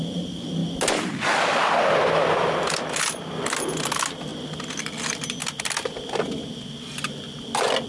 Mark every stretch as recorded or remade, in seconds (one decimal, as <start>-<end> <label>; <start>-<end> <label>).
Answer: 0.0-7.9 recorded